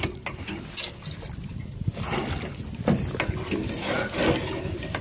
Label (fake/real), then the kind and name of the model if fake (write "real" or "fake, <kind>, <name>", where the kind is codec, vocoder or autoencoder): real